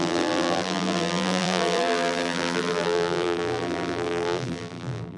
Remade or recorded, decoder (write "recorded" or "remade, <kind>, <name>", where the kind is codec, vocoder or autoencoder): remade, vocoder, BigVGAN v2